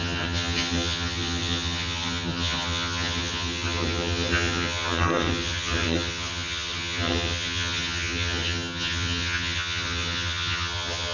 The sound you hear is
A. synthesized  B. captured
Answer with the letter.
A